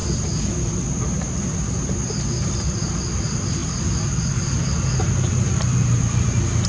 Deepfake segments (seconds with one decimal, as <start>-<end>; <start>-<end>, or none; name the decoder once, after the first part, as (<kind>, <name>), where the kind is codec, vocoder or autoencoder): 0.0-3.6 (vocoder, BigVGAN v2); 5.3-6.7